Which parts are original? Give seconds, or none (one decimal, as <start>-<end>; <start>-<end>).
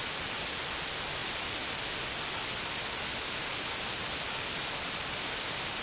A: 0.0-5.8